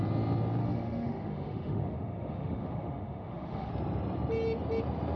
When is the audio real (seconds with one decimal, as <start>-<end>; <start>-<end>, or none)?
0.0-0.6; 3.7-5.2